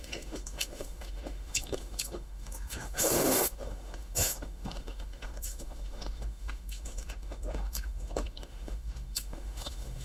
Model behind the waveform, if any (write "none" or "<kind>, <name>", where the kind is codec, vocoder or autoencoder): autoencoder, DAC-VAE